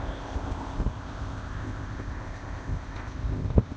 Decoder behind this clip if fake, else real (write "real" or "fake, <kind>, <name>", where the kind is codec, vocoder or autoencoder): fake, codec, ZipCodec